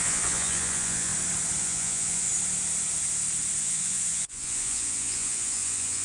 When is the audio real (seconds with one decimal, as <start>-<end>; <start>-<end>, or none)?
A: 1.1-1.6; 2.3-3.6